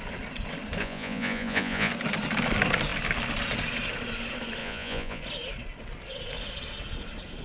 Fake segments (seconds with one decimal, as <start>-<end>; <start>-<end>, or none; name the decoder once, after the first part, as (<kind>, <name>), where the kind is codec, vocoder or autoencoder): 0.8-1.9 (vocoder, Vocos); 4.6-5.2